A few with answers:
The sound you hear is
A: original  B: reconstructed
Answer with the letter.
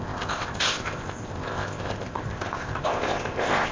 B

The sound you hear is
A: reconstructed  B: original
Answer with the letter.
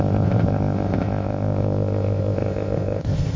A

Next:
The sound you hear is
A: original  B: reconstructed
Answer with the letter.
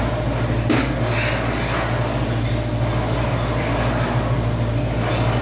A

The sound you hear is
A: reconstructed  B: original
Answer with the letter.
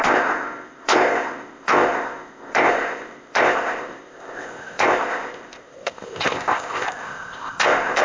A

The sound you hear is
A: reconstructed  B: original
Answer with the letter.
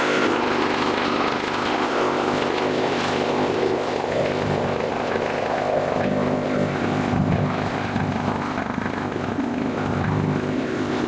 A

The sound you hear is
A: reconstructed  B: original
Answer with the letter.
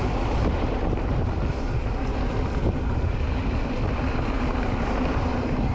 B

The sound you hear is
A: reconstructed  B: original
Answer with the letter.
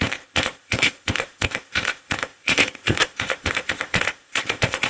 A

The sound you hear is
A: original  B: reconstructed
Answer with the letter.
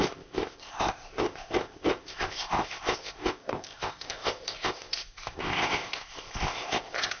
B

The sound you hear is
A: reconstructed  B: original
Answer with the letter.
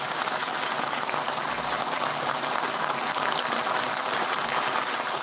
B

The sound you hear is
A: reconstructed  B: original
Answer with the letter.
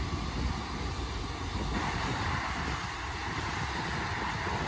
B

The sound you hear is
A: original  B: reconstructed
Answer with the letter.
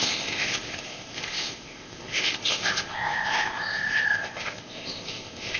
B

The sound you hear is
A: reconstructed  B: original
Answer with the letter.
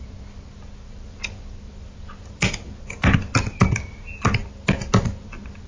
B